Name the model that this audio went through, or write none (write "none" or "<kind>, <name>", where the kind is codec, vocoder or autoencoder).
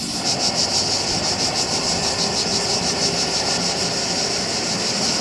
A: none